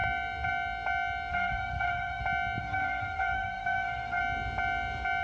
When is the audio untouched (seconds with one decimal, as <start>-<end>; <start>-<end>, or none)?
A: 0.0-1.3; 2.2-2.6; 4.2-5.2